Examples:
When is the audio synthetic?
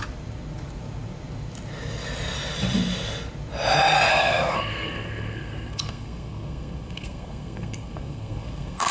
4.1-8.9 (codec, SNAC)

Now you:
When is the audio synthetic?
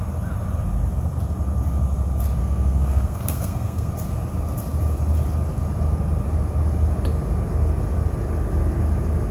2.4-3.9 (codec, SNAC)